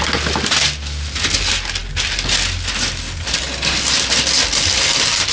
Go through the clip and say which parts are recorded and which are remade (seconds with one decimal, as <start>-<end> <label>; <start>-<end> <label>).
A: 0.0-5.3 recorded